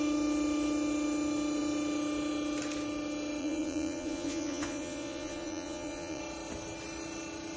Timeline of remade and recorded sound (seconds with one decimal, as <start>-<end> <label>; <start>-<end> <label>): 0.0-3.4 recorded; 3.4-6.2 remade; 6.2-7.6 recorded